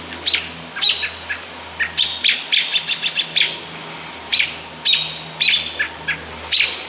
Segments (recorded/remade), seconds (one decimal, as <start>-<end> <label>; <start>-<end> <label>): 0.0-6.9 recorded